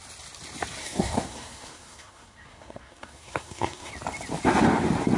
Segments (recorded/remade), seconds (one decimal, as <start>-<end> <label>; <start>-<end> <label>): 0.0-0.8 recorded; 0.8-3.9 remade; 3.9-5.2 recorded